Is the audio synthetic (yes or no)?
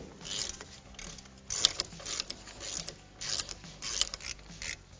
no